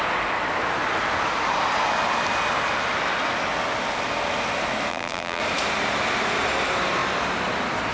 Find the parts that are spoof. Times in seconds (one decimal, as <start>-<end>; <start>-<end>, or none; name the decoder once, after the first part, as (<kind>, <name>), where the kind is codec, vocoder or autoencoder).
4.9-5.4 (vocoder, BigVGAN v2)